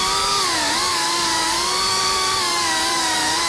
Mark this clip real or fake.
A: fake